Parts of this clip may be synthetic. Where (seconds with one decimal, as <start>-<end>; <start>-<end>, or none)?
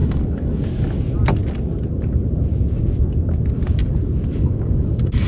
0.0-0.6; 4.3-5.3